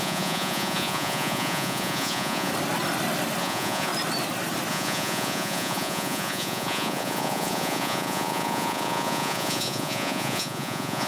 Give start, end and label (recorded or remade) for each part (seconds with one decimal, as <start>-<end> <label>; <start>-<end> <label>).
0.0-2.5 remade; 2.5-3.4 recorded; 3.4-3.9 remade; 3.9-4.7 recorded; 4.7-11.1 remade